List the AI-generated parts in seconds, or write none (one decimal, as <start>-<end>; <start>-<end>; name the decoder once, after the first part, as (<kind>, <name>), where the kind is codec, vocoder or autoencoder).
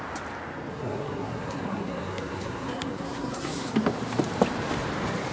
0.7-3.7 (codec, SNAC)